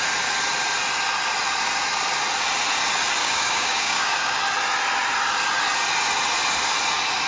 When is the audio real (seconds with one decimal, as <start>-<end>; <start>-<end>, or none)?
0.0-3.2; 4.4-7.3